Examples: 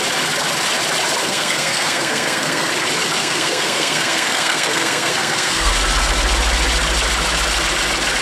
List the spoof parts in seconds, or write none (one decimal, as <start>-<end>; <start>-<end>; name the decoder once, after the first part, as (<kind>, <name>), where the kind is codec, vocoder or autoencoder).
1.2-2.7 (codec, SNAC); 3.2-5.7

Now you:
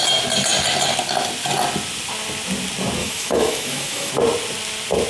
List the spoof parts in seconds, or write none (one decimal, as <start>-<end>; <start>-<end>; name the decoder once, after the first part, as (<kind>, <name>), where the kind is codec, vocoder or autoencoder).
3.0-4.1 (autoencoder, DAC-VAE)

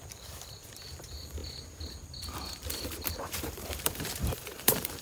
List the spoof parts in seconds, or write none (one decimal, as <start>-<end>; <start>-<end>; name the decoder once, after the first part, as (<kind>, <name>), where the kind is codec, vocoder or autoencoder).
0.0-1.4 (vocoder, BigVGAN v2); 3.2-5.0

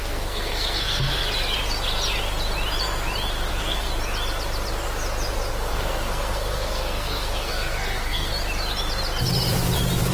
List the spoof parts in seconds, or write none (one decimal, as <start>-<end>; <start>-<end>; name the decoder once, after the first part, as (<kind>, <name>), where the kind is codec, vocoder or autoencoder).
0.0-1.2 (codec, SNAC); 3.5-3.9; 5.5-8.3